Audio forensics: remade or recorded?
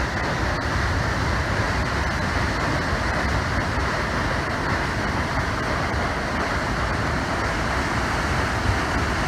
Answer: recorded